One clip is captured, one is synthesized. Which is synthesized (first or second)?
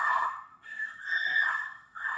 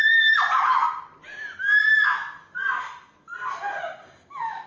first